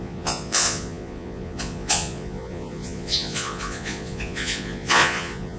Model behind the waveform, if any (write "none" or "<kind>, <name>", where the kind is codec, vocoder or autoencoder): vocoder, Vocos